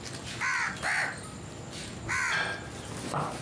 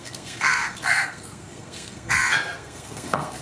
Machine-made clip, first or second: second